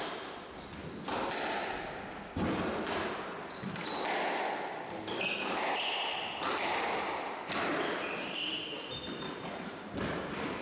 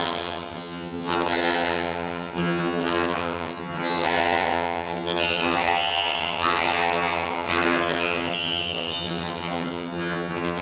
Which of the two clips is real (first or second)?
first